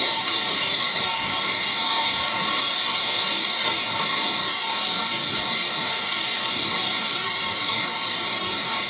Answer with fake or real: fake